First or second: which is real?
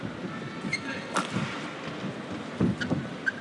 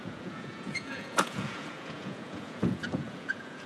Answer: first